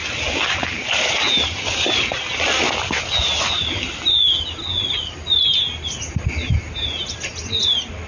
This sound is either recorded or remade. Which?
recorded